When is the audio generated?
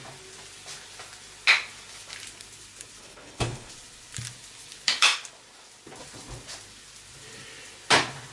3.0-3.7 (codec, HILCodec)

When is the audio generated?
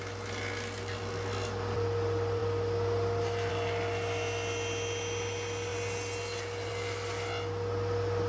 none